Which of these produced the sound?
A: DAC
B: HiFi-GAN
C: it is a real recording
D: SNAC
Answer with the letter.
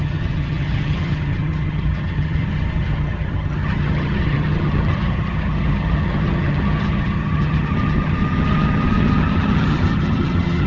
B